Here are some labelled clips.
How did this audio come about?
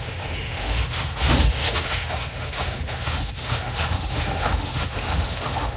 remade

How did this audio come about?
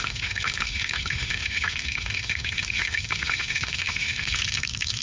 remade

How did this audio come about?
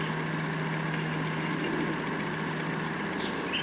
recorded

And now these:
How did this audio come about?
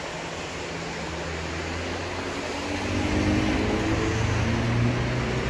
recorded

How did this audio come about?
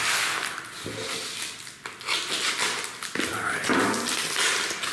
recorded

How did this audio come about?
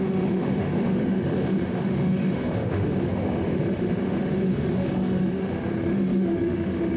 remade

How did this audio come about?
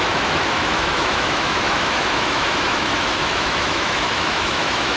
remade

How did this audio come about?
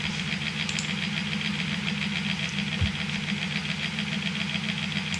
recorded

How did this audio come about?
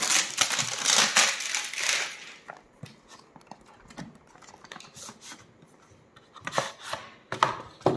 recorded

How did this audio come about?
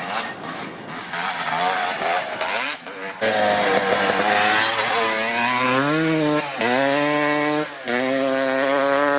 recorded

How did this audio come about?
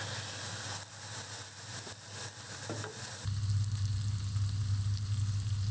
recorded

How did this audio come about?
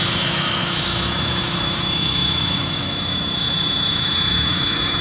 remade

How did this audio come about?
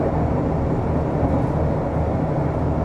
recorded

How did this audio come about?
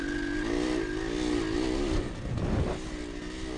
recorded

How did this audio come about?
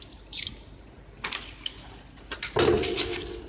recorded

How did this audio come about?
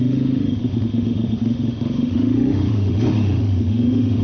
remade